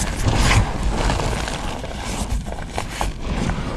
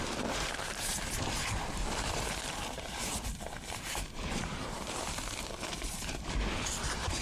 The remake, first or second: second